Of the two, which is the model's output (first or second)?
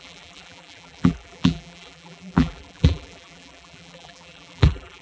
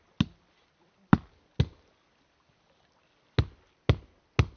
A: first